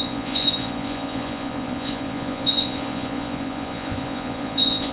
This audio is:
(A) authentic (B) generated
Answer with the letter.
B